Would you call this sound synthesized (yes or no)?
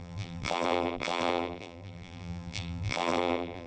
yes